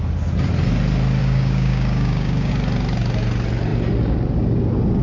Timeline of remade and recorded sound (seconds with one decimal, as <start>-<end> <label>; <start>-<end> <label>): 0.0-1.2 recorded; 1.2-2.5 remade; 2.5-5.0 recorded